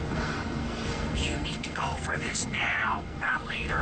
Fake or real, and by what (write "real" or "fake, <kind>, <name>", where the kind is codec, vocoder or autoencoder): fake, codec, SNAC